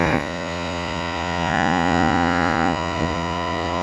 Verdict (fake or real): fake